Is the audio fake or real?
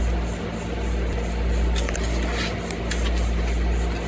real